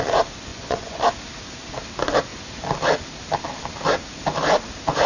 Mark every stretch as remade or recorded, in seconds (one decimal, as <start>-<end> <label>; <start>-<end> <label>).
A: 0.0-0.5 recorded; 0.5-1.0 remade; 1.0-5.1 recorded